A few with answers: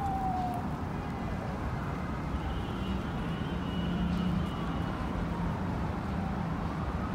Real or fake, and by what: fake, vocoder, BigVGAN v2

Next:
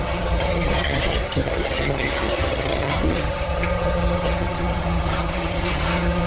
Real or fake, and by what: fake, vocoder, HiFi-GAN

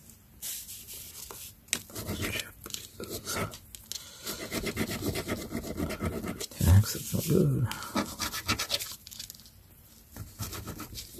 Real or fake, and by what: real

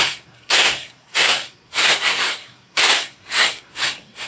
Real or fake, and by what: fake, codec, SNAC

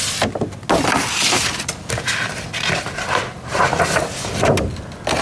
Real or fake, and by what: real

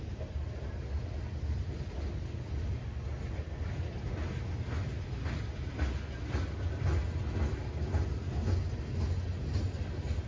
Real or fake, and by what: real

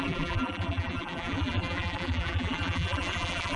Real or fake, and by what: fake, vocoder, BigVGAN v2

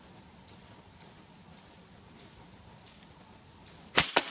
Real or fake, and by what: real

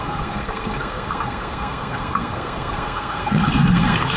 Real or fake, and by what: fake, codec, SNAC